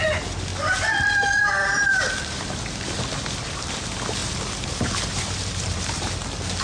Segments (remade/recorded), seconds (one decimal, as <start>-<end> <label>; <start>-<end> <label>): 0.0-0.5 recorded; 0.5-3.7 remade; 3.7-4.2 recorded; 4.2-5.8 remade; 5.8-6.6 recorded

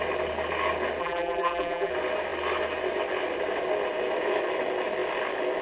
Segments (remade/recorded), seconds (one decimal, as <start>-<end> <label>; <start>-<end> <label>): 0.0-1.0 recorded; 1.0-1.9 remade; 1.9-5.6 recorded

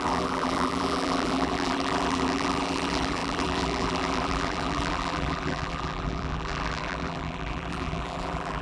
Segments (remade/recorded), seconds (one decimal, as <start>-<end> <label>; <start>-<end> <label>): 0.0-8.6 remade

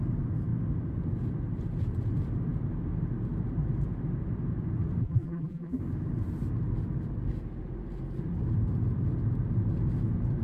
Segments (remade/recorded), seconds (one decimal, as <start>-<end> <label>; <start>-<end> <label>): 0.0-5.0 recorded; 5.0-5.8 remade; 5.8-10.4 recorded

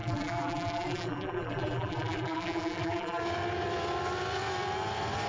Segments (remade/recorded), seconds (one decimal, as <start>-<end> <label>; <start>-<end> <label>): 0.0-3.2 remade; 3.2-5.3 recorded